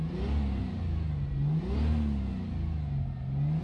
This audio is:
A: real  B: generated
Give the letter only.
A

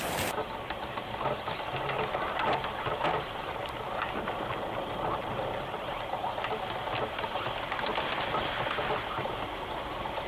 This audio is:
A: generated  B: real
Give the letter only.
B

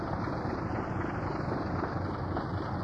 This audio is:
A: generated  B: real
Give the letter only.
A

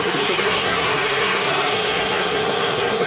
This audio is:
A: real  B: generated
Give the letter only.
B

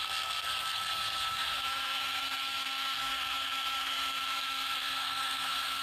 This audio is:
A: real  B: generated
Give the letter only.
B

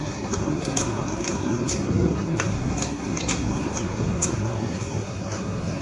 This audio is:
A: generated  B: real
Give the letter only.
A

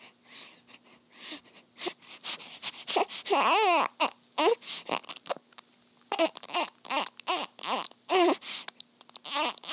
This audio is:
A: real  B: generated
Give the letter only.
A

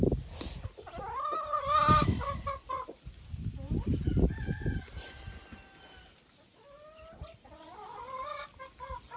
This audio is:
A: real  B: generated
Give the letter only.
A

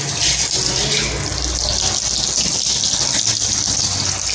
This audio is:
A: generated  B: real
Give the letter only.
B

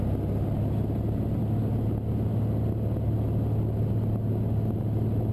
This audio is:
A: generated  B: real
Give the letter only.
B